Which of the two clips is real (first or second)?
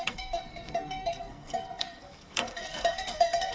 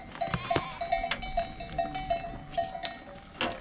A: second